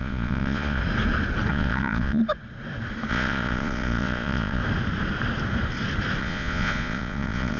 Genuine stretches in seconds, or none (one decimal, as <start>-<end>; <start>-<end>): 0.8-1.5; 2.2-3.1; 4.6-6.2